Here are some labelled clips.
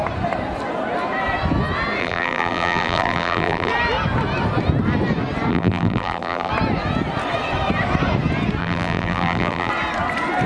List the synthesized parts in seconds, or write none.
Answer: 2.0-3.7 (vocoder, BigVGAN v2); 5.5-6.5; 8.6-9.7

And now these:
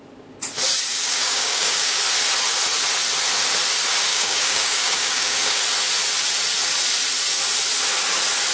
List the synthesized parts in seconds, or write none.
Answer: 0.9-2.0 (codec, DAC); 4.1-5.6

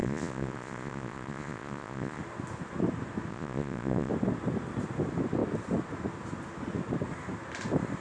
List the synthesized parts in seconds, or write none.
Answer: 0.0-2.2 (vocoder, Vocos); 3.3-4.1

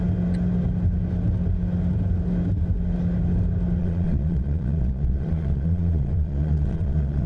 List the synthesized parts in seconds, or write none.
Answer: 3.8-7.3 (vocoder, Vocos)

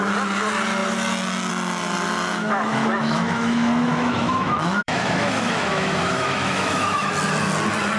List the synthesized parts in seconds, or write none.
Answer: 2.4-7.1 (autoencoder, DAC-VAE)

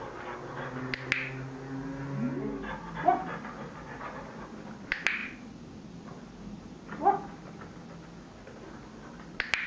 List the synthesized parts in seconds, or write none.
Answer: none

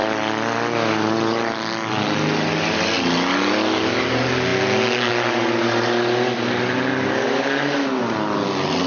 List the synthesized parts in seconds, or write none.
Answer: none

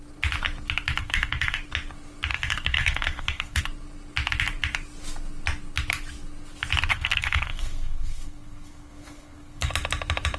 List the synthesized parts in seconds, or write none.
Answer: 1.0-1.6 (codec, SNAC); 2.3-3.6; 6.9-9.7